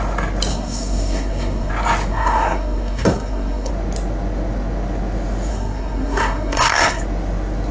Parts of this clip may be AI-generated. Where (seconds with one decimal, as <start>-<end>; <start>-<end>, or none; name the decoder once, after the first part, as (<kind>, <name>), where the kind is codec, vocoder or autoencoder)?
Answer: 0.5-1.7 (codec, SNAC); 2.1-3.7; 5.5-7.0